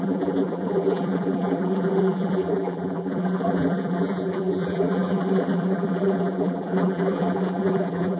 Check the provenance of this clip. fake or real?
fake